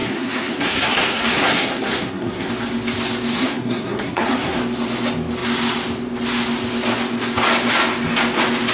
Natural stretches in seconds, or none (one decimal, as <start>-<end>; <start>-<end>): 2.5-3.3; 4.6-8.7